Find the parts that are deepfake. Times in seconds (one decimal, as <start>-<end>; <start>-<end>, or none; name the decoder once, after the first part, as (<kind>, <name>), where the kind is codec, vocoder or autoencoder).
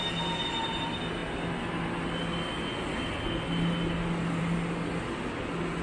none